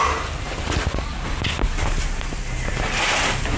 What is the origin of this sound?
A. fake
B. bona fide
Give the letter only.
B